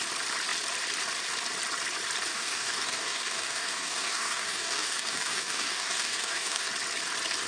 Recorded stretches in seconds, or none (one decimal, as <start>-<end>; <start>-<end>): 0.0-2.3; 6.7-7.5